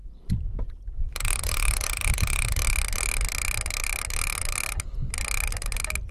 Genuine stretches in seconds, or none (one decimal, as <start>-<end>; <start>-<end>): 0.0-6.1